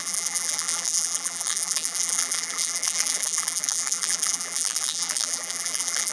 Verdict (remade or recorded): remade